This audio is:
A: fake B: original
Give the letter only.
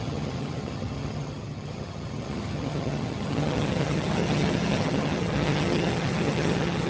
A